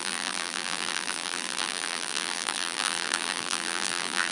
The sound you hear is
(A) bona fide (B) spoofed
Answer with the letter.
B